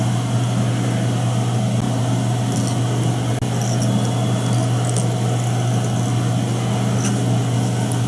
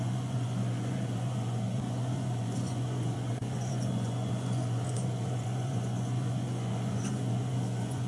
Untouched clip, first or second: first